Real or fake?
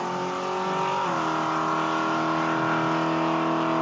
real